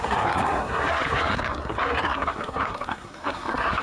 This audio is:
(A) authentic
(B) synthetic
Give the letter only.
B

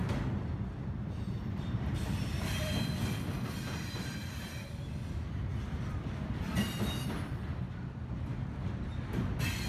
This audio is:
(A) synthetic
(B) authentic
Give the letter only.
B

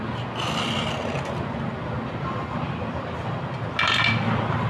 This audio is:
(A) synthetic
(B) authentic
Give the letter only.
B